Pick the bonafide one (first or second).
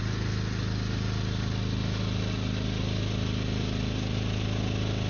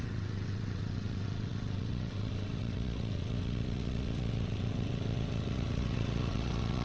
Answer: first